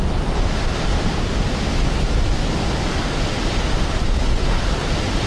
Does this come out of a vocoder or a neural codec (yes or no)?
no